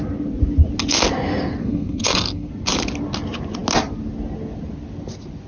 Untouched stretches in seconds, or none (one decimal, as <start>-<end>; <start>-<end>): 0.0-1.6; 2.5-5.5